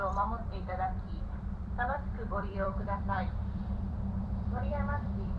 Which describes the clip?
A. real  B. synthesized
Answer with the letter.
B